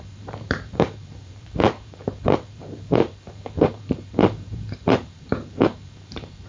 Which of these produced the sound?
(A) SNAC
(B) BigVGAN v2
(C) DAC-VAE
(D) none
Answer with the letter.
B